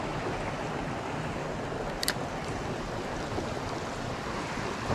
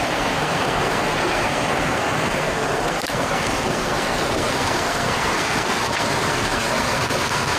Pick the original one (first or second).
first